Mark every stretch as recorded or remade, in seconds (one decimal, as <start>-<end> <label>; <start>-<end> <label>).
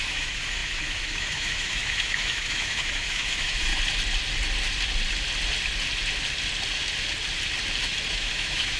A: 0.0-3.7 remade; 3.7-8.1 recorded; 8.1-8.8 remade